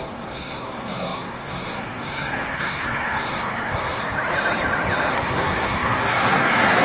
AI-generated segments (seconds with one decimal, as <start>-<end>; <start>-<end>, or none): 0.0-4.0; 5.1-6.8